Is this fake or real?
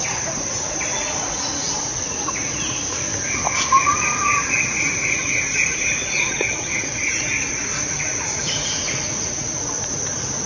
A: fake